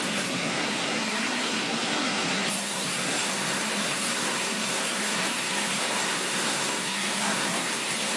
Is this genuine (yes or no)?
no